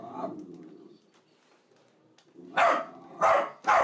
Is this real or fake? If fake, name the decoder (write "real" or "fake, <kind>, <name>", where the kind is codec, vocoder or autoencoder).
real